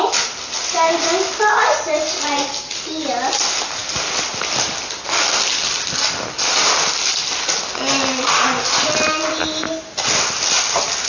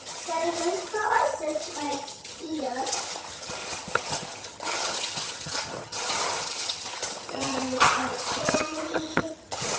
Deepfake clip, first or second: second